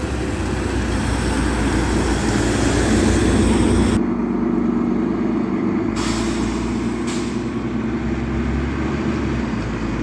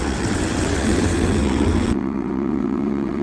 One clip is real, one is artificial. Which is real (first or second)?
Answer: first